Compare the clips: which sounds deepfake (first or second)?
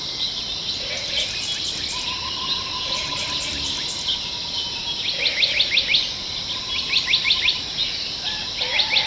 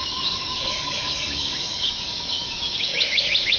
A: second